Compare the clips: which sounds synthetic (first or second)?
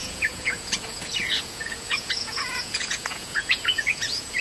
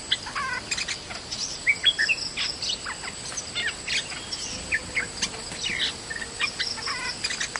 first